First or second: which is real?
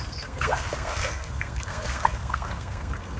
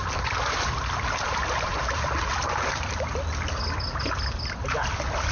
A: second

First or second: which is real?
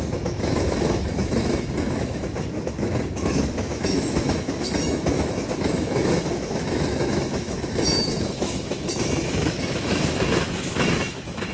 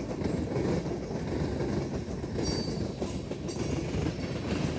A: second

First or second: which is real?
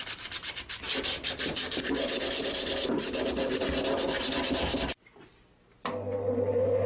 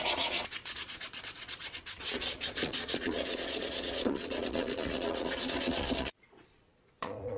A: first